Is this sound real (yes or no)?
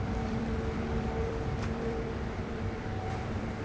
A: no